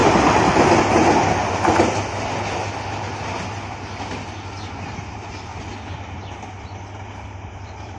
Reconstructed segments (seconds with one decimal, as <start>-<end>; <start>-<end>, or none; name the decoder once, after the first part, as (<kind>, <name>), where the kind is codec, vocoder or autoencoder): 4.8-5.5 (vocoder, BigVGAN v2); 7.6-8.0